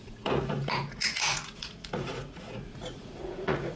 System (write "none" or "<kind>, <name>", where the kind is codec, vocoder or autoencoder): vocoder, Vocos